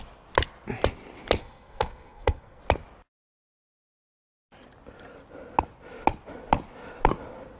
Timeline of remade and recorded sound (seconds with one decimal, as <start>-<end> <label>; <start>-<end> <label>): 0.0-1.4 recorded; 1.4-2.6 remade; 2.6-7.6 recorded